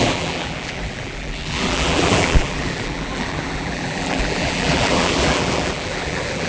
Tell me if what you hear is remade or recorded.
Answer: remade